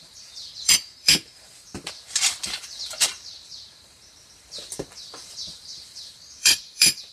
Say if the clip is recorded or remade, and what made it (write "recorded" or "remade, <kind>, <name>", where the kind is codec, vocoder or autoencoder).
remade, vocoder, BigVGAN v2